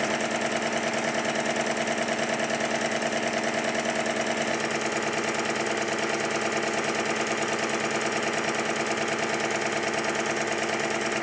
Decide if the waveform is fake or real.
real